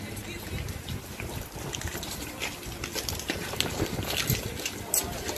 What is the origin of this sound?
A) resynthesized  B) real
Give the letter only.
B